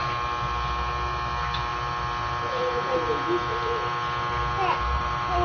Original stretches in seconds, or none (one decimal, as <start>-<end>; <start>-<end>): 0.0-5.4